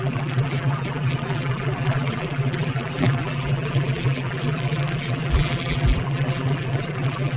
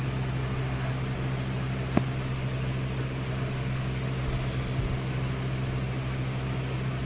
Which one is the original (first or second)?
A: second